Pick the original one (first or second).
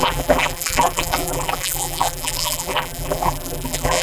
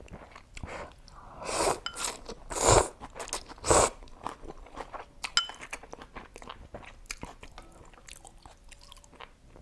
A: second